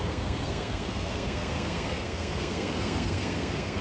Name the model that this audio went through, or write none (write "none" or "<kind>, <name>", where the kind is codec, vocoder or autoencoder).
codec, SNAC